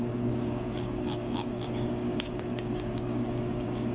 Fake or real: fake